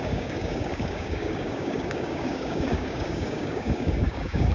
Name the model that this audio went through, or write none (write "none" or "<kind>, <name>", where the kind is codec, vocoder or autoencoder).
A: codec, DAC